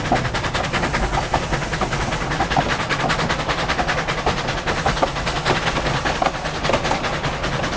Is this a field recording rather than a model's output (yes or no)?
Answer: yes